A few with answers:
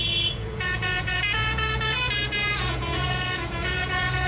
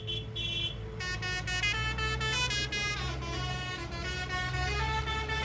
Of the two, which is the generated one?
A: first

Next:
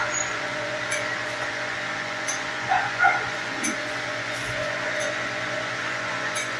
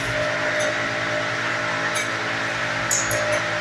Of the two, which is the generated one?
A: first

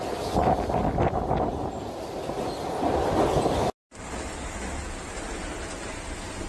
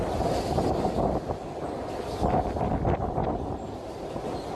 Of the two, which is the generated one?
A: second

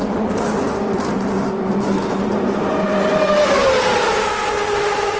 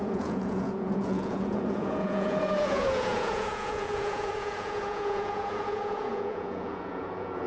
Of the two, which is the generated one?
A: second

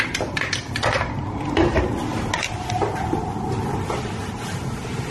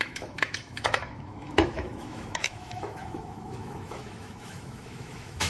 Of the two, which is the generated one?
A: second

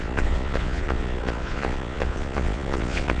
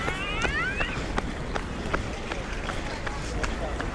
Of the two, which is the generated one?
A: first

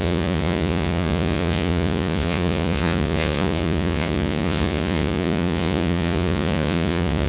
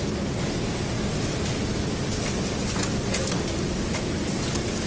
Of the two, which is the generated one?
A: first